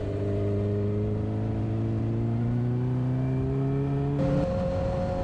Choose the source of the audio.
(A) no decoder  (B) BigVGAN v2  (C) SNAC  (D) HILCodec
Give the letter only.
A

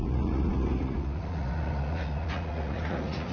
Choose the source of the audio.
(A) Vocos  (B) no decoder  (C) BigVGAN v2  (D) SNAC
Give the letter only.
A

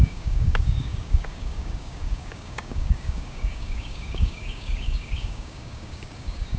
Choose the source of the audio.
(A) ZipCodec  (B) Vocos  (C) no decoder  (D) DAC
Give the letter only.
D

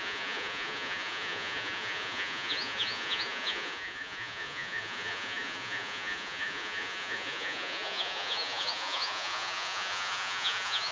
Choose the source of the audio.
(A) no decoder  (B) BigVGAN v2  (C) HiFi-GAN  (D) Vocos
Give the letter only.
D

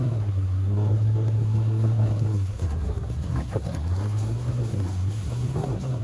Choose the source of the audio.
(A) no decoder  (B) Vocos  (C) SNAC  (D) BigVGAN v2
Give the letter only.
C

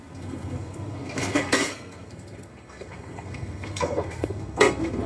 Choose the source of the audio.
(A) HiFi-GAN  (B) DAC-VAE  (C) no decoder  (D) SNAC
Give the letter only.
D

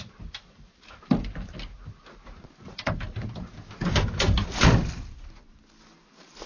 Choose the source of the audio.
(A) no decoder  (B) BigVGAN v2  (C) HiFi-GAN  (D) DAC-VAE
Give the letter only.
A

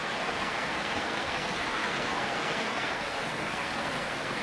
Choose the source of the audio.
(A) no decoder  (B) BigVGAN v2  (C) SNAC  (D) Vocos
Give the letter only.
C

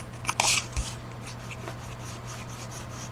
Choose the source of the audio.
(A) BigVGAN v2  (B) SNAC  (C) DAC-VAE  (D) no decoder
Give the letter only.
D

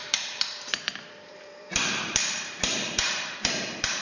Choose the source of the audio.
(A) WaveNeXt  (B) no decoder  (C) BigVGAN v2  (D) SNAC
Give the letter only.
C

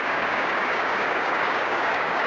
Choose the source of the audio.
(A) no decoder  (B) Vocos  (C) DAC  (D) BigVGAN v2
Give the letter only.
C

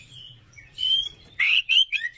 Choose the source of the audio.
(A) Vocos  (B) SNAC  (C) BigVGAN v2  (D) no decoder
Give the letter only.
A